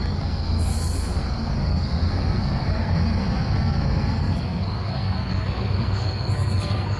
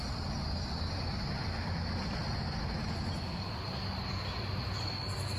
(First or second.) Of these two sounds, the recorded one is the second